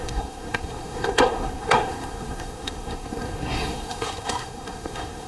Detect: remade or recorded remade